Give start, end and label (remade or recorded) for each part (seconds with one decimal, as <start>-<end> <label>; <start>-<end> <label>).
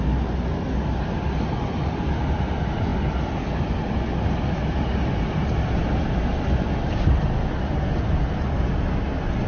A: 0.0-9.5 recorded